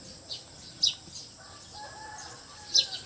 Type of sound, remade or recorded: recorded